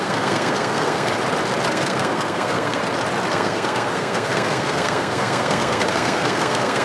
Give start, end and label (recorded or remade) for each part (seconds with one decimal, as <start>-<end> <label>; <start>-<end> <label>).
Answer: 0.0-1.1 remade; 1.1-1.7 recorded; 1.7-2.8 remade; 2.8-3.3 recorded; 3.3-6.8 remade